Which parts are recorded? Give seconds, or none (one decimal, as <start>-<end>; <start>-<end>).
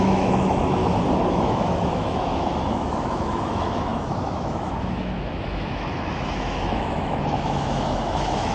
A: 0.8-1.3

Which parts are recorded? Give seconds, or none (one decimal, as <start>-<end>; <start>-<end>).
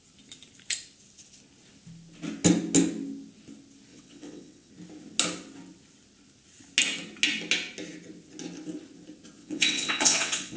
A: 0.0-3.9; 4.7-9.4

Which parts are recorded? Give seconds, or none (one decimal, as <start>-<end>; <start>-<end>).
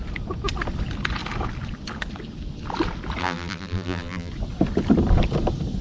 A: 0.0-3.2; 4.3-5.8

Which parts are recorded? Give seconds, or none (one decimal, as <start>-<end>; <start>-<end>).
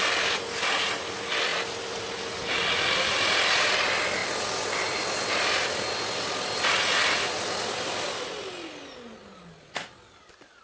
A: 0.0-1.5; 2.0-9.2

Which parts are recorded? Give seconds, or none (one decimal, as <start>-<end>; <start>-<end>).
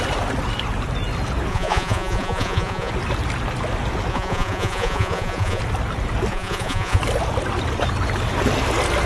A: 0.0-1.5; 2.9-4.1; 5.6-6.3; 7.0-9.1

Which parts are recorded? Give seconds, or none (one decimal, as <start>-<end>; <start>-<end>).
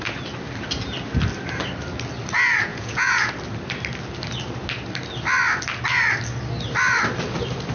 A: 0.0-2.7; 3.3-7.7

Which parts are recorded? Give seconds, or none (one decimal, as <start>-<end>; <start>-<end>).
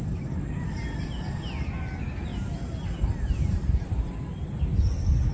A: 0.0-2.3; 4.1-5.3